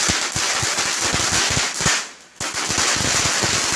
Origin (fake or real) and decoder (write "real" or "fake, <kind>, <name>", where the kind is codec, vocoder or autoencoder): real